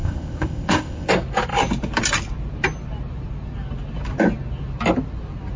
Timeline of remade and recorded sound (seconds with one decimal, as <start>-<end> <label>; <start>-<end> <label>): 0.0-1.1 remade; 1.1-5.6 recorded